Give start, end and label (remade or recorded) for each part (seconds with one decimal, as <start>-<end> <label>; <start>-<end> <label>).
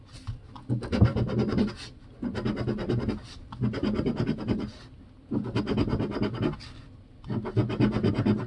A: 0.0-8.5 recorded